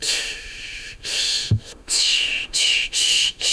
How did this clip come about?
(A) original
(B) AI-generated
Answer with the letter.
B